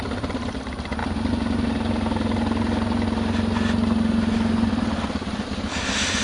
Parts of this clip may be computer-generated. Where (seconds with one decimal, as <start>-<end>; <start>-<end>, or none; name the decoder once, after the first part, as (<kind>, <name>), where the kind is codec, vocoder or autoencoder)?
0.0-1.0 (vocoder, BigVGAN v2); 4.7-6.2